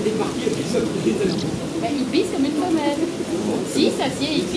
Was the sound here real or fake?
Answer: real